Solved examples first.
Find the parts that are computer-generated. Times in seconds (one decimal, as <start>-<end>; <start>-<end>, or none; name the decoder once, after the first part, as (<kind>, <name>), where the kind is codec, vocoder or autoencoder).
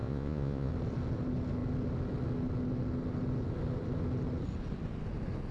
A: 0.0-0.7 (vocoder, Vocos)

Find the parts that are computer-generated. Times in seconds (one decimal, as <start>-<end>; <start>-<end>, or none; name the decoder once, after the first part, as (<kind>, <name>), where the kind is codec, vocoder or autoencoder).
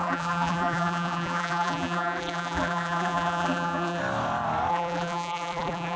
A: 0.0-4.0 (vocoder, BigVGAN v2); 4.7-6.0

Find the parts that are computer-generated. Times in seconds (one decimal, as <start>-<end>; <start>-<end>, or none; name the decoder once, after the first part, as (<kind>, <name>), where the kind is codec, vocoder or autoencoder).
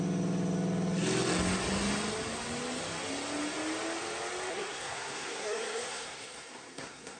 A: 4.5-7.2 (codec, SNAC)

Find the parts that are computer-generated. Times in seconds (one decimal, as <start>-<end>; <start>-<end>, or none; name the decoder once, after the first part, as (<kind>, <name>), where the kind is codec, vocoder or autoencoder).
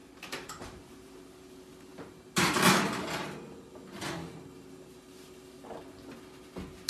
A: 0.0-1.2 (vocoder, BigVGAN v2)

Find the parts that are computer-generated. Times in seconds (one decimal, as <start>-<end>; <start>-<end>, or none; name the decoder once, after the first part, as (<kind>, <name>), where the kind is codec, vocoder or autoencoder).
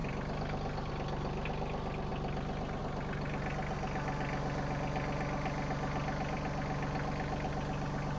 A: none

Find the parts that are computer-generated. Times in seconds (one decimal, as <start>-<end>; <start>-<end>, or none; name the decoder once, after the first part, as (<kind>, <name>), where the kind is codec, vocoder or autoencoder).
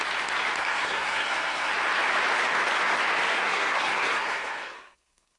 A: 0.6-1.7 (codec, SNAC); 3.3-5.4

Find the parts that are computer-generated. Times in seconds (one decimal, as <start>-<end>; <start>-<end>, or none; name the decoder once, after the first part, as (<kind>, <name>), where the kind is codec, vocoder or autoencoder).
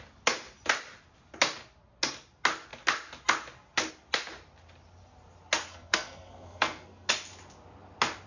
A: 5.7-7.1 (codec, SNAC)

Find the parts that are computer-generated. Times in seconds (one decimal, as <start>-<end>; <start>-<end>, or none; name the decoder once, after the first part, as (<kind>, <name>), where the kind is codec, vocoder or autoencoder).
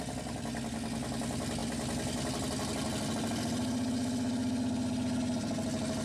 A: none